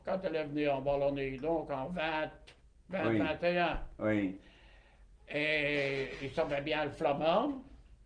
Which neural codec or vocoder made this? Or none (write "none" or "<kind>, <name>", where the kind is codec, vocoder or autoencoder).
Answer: none